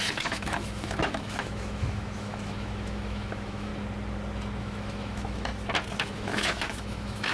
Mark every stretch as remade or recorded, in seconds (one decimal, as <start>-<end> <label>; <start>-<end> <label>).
0.0-3.7 remade; 3.7-4.6 recorded; 4.6-5.5 remade; 5.5-6.1 recorded; 6.1-7.3 remade